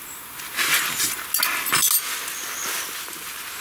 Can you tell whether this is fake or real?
real